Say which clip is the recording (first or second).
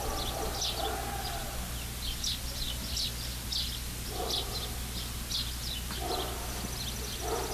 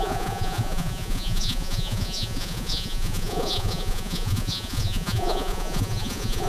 first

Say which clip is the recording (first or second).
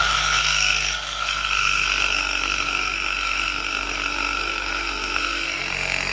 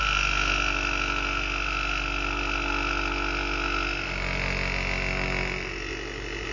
second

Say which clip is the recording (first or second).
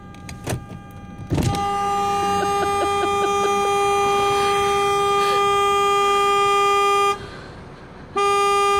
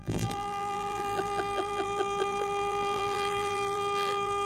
first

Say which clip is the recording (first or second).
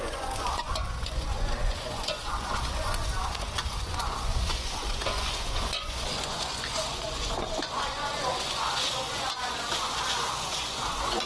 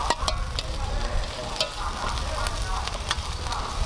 second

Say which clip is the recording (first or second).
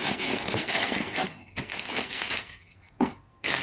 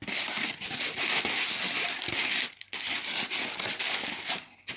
second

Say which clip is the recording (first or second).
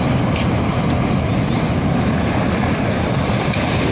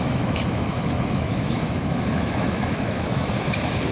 first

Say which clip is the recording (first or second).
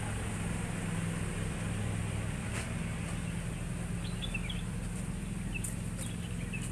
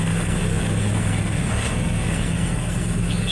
first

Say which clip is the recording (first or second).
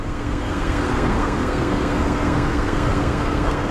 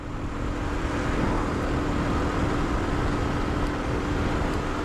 second